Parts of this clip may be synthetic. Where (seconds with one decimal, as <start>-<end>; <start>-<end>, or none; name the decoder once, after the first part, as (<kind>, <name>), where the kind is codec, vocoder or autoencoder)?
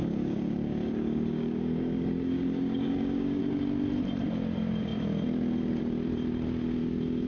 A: 0.0-3.4 (codec, DAC)